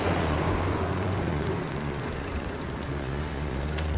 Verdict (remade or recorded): remade